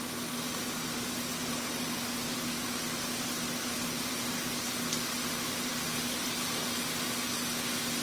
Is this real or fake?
real